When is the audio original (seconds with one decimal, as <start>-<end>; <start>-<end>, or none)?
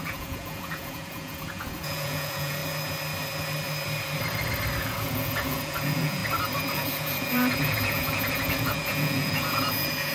2.6-4.8; 6.2-6.7